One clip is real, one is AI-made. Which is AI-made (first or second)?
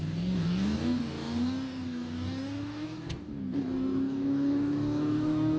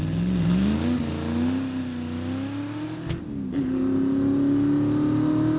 first